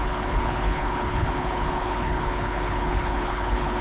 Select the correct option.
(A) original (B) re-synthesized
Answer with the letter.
B